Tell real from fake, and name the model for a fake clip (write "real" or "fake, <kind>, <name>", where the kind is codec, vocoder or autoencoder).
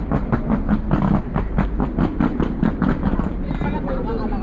real